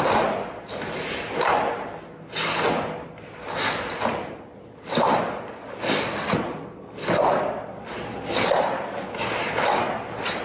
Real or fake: real